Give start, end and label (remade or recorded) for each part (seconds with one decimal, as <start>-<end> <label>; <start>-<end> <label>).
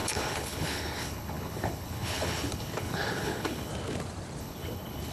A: 0.0-3.7 remade; 3.7-4.4 recorded; 4.4-5.1 remade